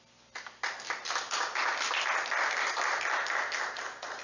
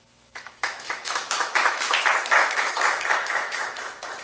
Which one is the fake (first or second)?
second